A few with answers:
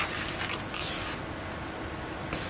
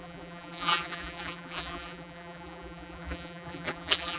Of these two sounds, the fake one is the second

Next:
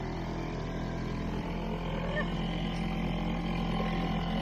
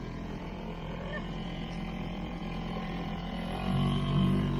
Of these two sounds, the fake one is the second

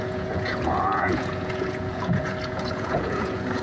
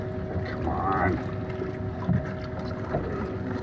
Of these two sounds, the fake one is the first